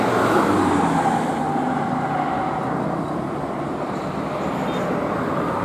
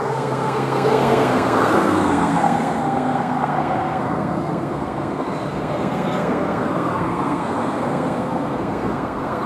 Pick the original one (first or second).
first